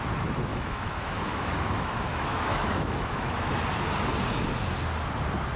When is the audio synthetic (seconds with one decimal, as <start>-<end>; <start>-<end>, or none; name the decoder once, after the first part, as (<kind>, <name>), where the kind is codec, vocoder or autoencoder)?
0.5-3.6 (autoencoder, DAC-VAE)